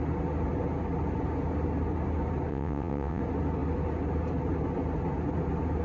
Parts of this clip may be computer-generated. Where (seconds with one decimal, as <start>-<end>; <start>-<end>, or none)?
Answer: 2.5-3.2